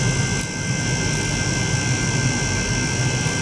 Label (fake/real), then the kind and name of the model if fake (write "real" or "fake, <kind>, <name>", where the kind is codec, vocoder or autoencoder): real